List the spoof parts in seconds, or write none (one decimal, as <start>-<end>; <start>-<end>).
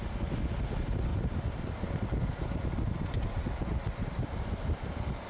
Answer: none